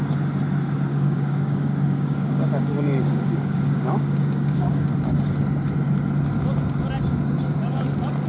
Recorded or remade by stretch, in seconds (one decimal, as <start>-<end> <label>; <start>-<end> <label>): 0.0-0.9 recorded; 0.9-5.4 remade; 5.4-8.3 recorded